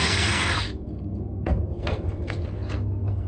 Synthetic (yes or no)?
yes